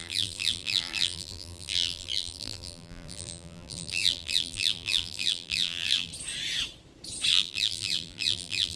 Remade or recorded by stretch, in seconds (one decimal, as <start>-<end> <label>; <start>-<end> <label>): 0.0-6.1 remade; 6.1-7.3 recorded; 7.3-8.8 remade